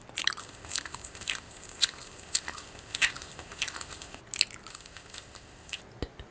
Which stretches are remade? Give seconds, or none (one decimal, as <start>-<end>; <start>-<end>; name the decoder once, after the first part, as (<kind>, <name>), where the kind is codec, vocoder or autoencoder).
0.4-4.2 (codec, ZipCodec); 4.7-5.8